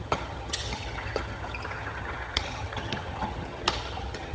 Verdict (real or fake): fake